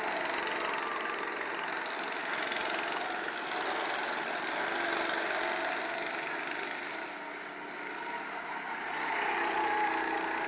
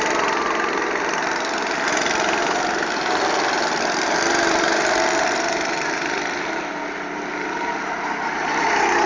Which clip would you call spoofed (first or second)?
second